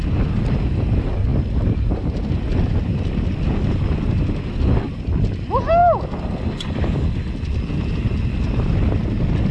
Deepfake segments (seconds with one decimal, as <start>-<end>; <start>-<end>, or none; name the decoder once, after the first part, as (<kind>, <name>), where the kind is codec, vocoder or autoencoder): none